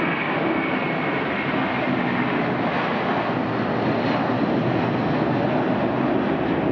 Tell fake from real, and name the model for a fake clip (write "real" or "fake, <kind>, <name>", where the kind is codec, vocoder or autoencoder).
real